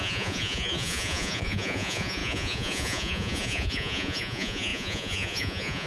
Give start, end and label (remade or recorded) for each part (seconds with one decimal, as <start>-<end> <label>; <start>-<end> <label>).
0.0-5.9 remade